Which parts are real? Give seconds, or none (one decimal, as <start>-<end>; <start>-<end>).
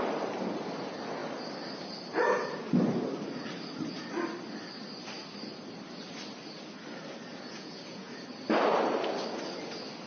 0.0-7.3; 8.1-10.1